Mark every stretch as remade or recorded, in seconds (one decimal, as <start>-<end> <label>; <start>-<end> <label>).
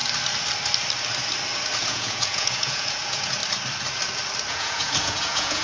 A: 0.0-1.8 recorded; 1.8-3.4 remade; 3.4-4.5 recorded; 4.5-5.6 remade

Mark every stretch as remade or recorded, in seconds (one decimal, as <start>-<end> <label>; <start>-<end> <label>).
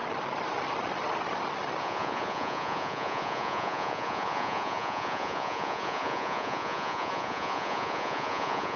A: 0.0-1.8 recorded; 1.8-8.8 remade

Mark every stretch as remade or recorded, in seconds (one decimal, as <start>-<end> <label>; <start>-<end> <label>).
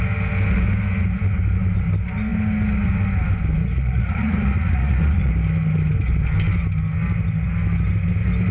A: 0.0-3.6 recorded; 3.6-5.3 remade; 5.3-8.5 recorded